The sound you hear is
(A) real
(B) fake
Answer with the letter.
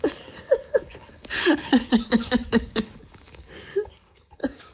B